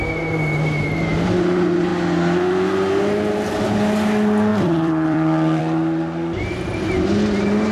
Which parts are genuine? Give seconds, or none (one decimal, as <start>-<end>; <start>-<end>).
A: 0.0-4.5; 5.6-7.7